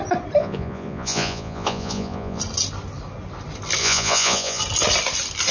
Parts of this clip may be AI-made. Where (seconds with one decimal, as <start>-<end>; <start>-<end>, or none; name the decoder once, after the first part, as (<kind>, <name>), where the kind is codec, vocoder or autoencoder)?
0.4-2.4 (vocoder, Vocos); 3.8-4.6